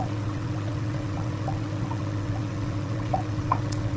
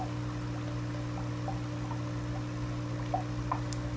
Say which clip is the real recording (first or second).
second